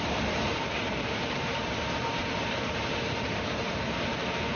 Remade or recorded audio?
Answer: remade